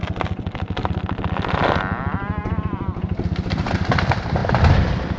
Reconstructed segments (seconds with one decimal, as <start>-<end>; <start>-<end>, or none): none